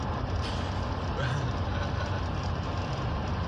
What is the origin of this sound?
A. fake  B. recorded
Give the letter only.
B